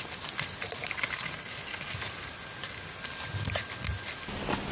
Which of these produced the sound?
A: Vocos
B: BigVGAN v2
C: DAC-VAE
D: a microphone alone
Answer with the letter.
D